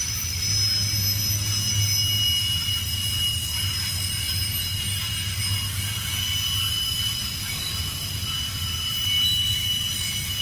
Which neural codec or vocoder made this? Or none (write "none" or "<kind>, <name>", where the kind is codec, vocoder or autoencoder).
none